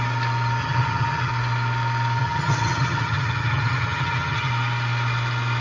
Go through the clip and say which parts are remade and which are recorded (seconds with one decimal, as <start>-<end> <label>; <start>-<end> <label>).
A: 0.0-0.6 recorded; 0.6-1.3 remade; 1.3-2.2 recorded; 2.2-4.5 remade; 4.5-5.6 recorded